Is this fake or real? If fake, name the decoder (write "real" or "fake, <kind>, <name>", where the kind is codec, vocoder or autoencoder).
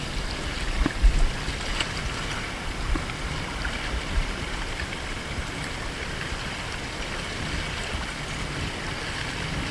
real